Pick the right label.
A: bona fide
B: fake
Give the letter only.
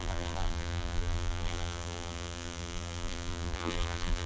B